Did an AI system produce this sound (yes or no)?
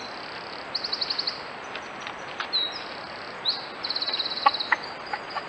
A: no